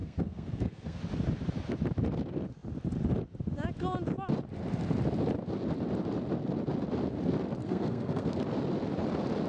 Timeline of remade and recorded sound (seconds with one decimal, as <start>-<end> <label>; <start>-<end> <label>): 0.0-1.0 remade; 1.0-7.6 recorded; 7.6-8.4 remade; 8.4-9.5 recorded